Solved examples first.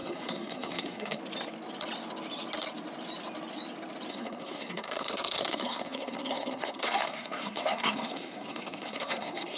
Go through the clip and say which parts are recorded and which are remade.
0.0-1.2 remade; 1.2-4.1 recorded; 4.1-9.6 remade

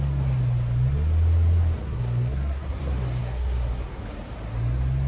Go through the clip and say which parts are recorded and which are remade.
0.0-1.8 recorded; 1.8-2.8 remade; 2.8-3.2 recorded; 3.2-4.0 remade; 4.0-5.1 recorded

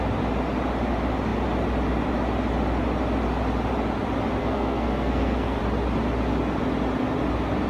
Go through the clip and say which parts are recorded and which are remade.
0.0-4.4 recorded; 4.4-5.6 remade; 5.6-7.7 recorded

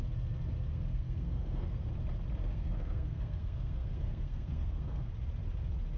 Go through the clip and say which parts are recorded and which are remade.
0.0-0.7 recorded; 0.7-1.9 remade; 1.9-2.4 recorded; 2.4-5.1 remade; 5.1-6.0 recorded